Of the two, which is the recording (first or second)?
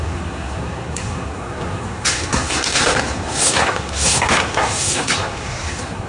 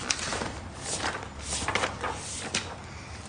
second